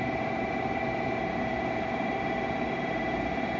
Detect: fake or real real